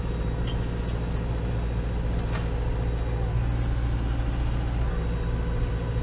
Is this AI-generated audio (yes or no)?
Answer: no